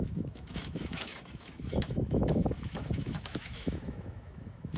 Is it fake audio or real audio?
fake